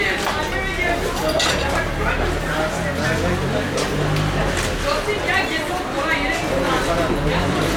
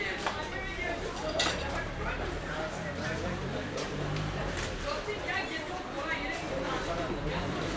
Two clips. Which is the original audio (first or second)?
first